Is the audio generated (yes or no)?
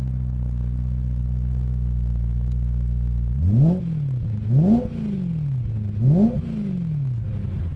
no